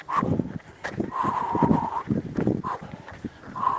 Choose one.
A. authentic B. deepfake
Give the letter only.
A